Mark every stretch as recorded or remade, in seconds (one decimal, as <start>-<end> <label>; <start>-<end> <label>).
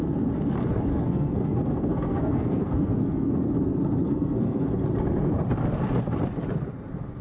0.0-0.9 recorded; 0.9-3.5 remade; 3.5-4.0 recorded; 4.0-4.7 remade; 4.7-7.2 recorded